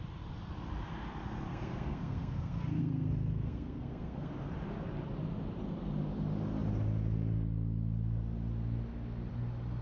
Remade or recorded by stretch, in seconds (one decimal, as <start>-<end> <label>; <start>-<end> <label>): 0.0-1.5 recorded; 1.5-4.3 remade; 4.3-9.8 recorded